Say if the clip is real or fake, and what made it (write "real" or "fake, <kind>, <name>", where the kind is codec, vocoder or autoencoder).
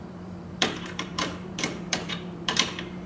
fake, vocoder, BigVGAN v2